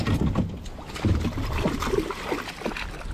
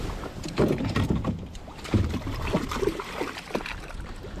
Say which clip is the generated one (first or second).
second